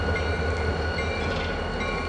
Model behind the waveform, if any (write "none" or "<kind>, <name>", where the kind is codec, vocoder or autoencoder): none